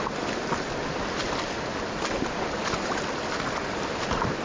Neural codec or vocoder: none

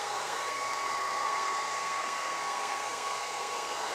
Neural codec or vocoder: codec, SNAC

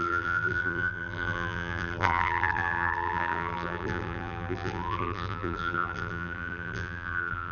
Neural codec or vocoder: vocoder, BigVGAN v2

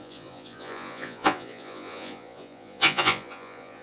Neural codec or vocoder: vocoder, Vocos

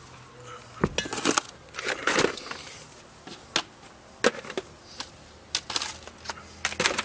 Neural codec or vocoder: none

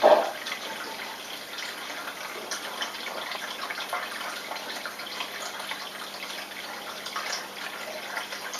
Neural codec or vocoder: none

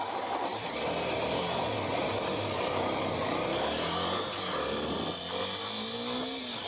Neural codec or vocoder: none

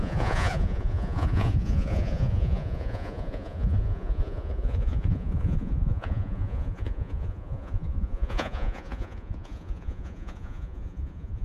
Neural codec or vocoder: vocoder, Vocos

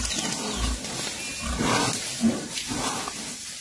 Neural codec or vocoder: none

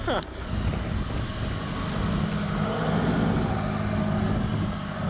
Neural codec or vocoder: none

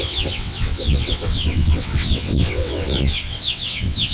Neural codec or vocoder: vocoder, WaveNeXt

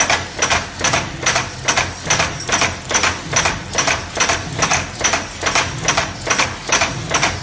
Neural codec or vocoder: none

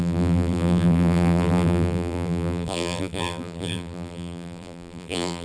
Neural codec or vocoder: vocoder, BigVGAN v2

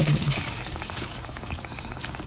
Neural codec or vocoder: codec, DAC